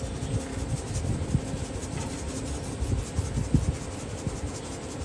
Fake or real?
real